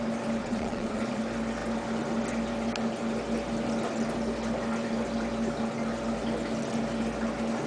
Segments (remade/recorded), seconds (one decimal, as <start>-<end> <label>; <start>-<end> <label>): 0.0-0.4 recorded; 0.4-1.2 remade; 1.2-7.7 recorded